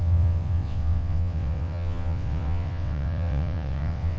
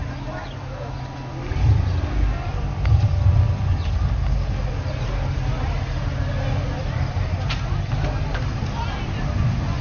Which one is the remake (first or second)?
first